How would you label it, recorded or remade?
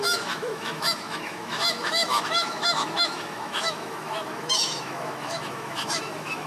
remade